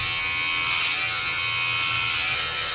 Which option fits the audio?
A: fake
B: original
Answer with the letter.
B